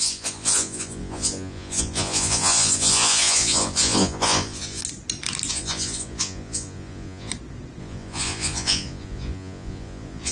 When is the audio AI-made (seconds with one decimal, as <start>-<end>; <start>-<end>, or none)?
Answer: 0.0-4.8; 5.5-7.3; 7.8-10.3